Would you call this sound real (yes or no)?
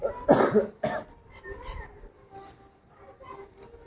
yes